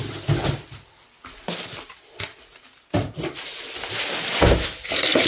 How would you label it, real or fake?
real